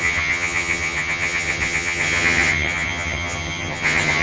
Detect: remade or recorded remade